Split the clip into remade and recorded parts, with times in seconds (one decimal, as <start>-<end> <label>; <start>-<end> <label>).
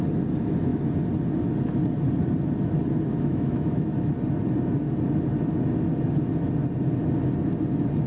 0.0-3.1 recorded; 3.1-4.1 remade; 4.1-8.1 recorded